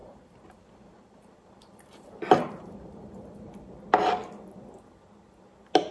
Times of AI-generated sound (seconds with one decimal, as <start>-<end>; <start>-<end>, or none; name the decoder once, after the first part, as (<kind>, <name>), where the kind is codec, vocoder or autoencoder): 0.0-3.5 (vocoder, BigVGAN v2)